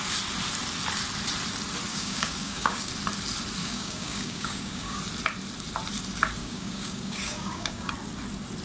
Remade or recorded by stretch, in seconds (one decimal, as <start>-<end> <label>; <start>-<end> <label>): 0.0-1.9 recorded; 1.9-2.9 remade; 2.9-3.6 recorded; 3.6-5.0 remade; 5.0-6.4 recorded; 6.4-7.9 remade; 7.9-8.6 recorded